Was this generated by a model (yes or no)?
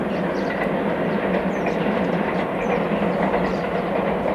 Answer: no